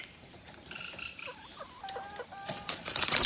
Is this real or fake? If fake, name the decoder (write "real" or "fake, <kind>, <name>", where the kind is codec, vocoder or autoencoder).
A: fake, vocoder, BigVGAN v2